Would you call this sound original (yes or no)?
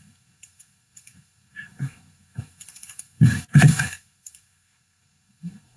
no